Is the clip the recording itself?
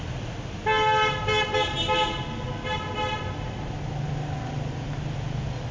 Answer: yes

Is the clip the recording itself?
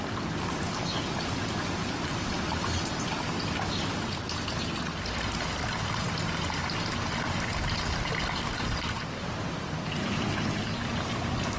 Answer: yes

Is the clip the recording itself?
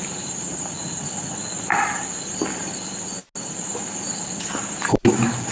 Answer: yes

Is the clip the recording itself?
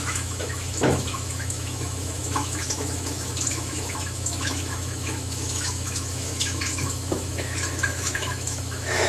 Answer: no